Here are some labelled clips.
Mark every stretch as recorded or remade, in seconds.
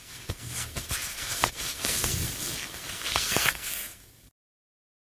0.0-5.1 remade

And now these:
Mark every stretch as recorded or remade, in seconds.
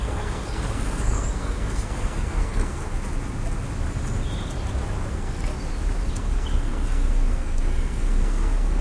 0.0-2.8 remade; 2.8-5.1 recorded; 5.1-5.5 remade; 5.5-6.1 recorded; 6.1-8.8 remade